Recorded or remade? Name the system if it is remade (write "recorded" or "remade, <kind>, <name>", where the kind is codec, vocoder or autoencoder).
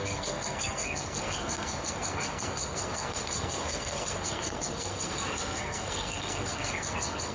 remade, codec, SNAC